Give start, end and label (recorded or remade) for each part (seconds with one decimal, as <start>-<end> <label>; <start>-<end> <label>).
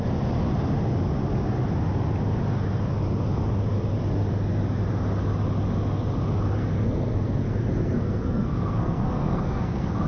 0.0-6.6 recorded; 6.6-10.1 remade